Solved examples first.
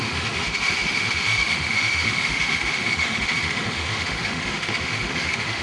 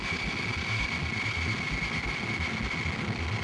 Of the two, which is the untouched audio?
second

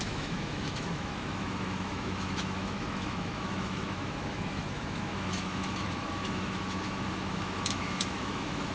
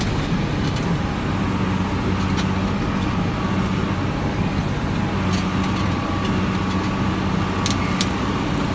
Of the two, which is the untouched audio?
second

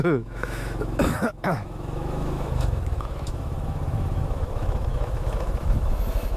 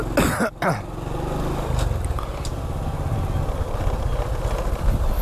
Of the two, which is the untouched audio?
second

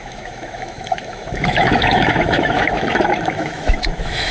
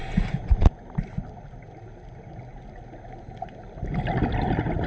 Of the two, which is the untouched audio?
second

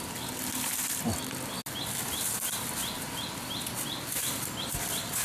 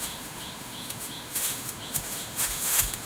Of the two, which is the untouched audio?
first